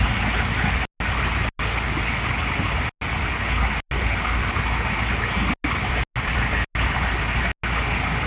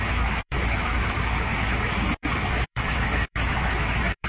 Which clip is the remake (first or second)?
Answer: second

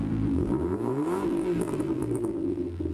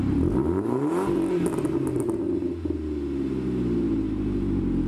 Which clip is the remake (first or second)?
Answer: first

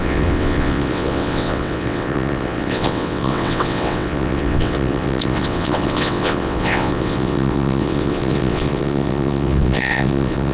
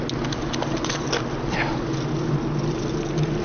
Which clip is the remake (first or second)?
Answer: first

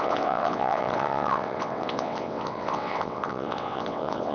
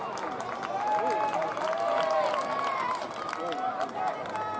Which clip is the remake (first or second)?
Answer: first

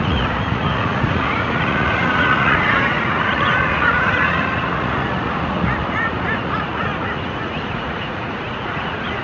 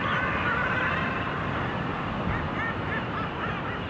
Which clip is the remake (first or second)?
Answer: first